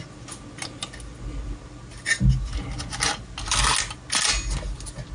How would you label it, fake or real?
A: real